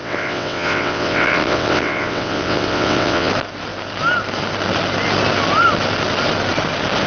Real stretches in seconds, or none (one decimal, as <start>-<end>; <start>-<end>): 3.3-7.1